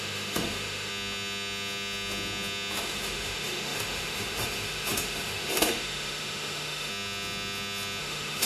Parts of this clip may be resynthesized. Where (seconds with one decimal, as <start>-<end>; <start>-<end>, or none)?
0.0-0.9; 2.8-6.9; 8.0-8.5